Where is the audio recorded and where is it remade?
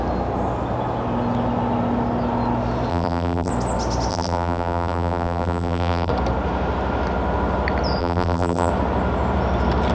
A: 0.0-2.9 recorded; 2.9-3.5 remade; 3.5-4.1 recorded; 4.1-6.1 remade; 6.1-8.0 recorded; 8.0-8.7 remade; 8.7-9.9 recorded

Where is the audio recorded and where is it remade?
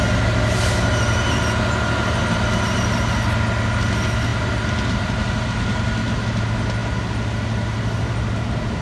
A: 0.0-8.8 recorded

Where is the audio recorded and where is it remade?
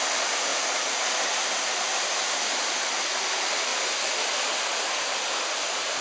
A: 0.0-0.5 remade; 0.5-2.6 recorded; 2.6-3.7 remade; 3.7-5.4 recorded; 5.4-6.0 remade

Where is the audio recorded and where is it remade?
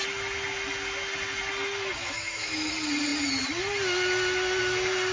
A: 0.0-2.0 recorded; 2.0-2.7 remade; 2.7-5.1 recorded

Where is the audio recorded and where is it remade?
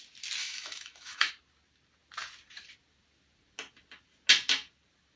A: 0.0-0.4 recorded; 0.4-1.3 remade; 1.3-5.2 recorded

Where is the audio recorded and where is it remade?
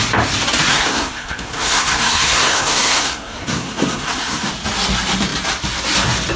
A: 0.0-0.7 recorded; 0.7-4.5 remade; 4.5-6.4 recorded